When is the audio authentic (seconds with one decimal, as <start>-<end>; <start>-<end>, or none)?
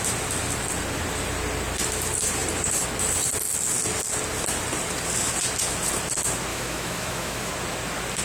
0.0-6.5; 7.5-8.2